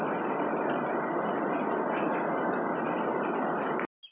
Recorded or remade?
recorded